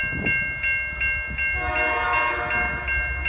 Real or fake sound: real